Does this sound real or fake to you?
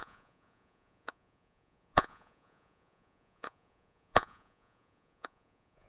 fake